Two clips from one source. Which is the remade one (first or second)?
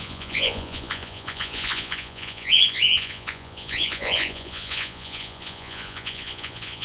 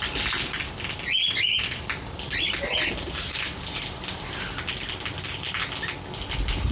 first